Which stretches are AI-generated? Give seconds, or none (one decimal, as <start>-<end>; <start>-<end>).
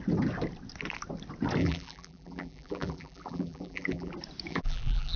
1.6-4.1; 4.5-5.2